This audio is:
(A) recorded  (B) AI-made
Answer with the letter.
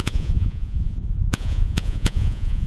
B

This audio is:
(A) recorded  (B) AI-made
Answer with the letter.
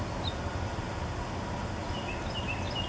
A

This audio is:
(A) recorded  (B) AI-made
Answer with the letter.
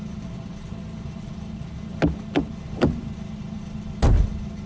A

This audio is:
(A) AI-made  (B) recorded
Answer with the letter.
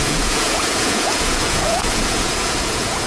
A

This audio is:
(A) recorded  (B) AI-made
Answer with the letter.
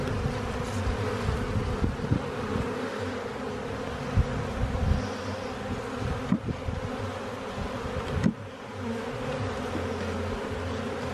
A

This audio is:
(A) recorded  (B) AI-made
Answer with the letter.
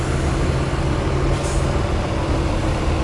A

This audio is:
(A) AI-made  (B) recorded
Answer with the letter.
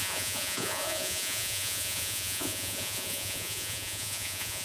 A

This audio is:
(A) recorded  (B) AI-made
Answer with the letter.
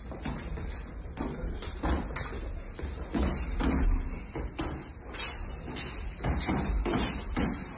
A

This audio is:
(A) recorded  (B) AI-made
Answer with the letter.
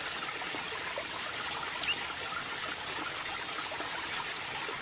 A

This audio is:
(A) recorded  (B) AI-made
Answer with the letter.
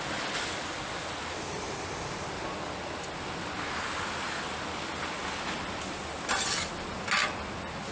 A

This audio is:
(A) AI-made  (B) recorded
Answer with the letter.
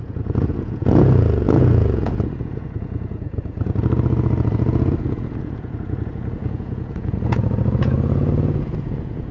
A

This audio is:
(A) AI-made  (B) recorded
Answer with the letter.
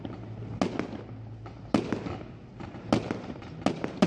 B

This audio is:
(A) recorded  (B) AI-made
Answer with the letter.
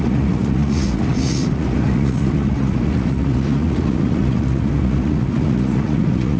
B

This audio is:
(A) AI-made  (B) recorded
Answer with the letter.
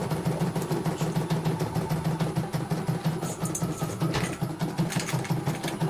B